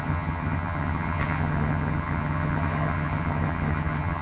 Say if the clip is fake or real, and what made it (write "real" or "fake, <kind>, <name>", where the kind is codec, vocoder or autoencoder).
fake, vocoder, HiFi-GAN